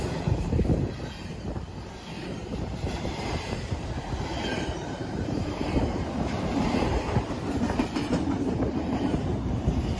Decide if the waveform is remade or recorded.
remade